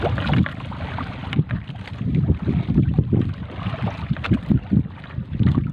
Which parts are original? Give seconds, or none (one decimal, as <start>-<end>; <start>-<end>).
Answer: 0.0-1.2; 1.9-5.7